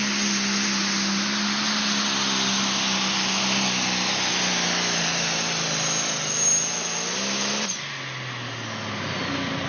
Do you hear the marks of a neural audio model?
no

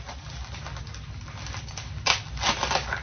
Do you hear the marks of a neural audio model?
no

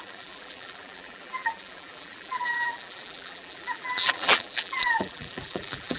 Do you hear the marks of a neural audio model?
yes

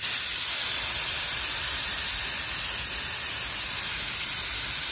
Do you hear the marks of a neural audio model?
yes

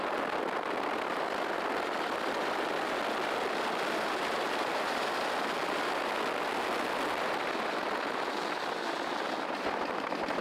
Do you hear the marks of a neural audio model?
no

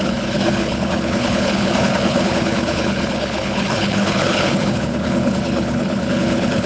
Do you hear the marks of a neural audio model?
yes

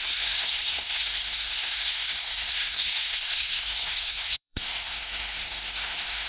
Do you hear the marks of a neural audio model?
yes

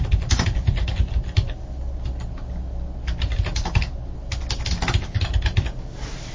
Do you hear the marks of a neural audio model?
no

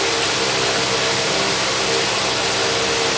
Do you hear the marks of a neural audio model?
no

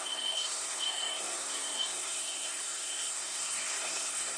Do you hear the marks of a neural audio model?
yes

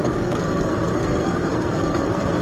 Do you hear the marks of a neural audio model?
yes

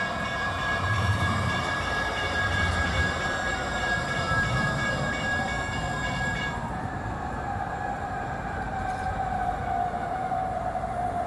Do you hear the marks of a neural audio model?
yes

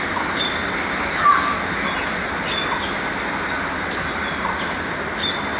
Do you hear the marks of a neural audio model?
no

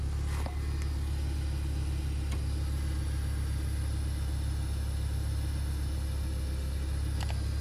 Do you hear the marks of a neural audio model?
no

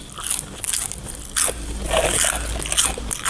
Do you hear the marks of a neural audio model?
no